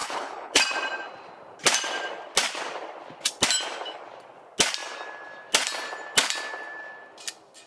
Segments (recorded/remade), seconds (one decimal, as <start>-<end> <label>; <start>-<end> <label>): 0.0-0.6 remade; 0.6-7.7 recorded